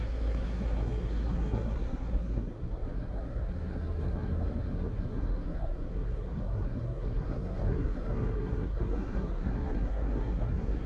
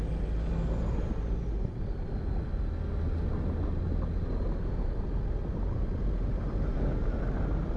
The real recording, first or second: second